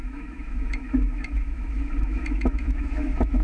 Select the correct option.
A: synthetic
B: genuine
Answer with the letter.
A